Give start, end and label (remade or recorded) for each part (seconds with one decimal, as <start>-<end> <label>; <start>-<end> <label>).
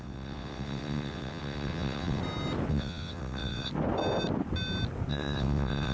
0.0-2.2 remade; 2.2-2.7 recorded; 2.7-3.7 remade; 3.7-5.1 recorded; 5.1-5.9 remade